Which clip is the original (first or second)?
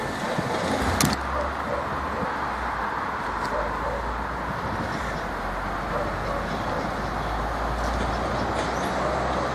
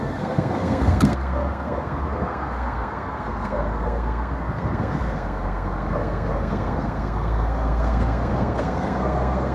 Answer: first